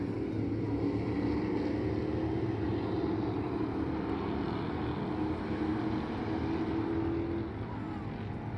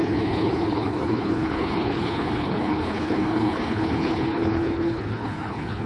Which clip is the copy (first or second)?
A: second